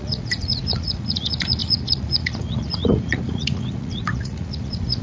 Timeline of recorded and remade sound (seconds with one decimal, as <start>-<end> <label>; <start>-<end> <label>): 0.0-5.0 remade